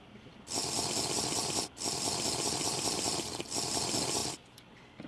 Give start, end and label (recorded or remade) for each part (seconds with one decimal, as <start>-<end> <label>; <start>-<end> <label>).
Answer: 0.0-5.1 recorded